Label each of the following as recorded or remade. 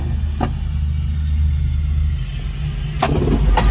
recorded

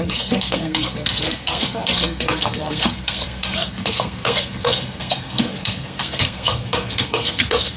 remade